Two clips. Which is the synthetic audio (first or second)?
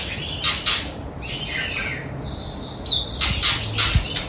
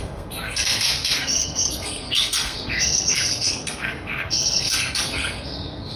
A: second